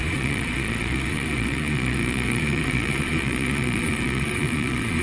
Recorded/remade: remade